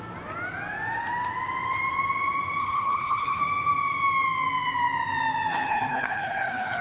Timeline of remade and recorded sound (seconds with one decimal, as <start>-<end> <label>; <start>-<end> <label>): 0.0-2.6 recorded; 2.6-3.4 remade; 3.4-5.5 recorded; 5.5-6.8 remade